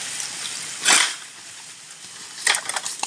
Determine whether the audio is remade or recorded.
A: recorded